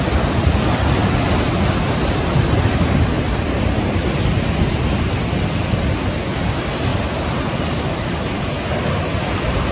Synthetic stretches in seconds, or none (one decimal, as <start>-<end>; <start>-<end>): none